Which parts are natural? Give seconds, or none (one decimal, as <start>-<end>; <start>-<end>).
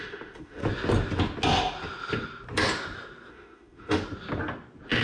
0.6-3.3; 4.0-5.0